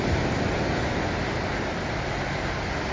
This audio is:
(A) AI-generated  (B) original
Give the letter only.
B